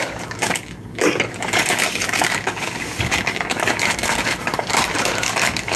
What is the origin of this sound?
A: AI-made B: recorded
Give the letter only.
A